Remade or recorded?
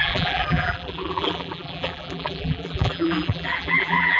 remade